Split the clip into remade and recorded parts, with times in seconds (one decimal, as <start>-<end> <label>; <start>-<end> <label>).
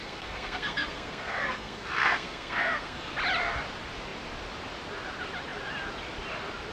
0.0-3.1 remade; 3.1-6.7 recorded